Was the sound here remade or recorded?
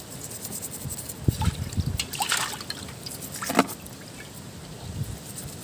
recorded